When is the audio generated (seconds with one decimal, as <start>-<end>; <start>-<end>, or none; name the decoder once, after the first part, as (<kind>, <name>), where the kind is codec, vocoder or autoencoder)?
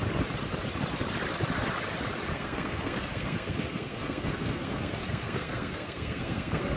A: 2.3-6.8 (codec, SNAC)